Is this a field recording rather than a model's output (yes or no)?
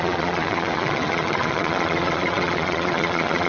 no